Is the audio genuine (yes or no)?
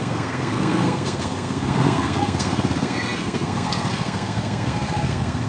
no